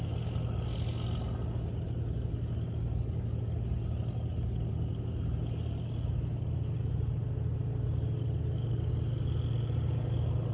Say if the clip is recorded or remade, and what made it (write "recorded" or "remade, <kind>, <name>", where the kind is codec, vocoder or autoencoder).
recorded